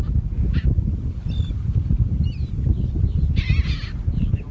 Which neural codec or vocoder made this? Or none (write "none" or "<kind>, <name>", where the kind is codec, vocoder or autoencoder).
none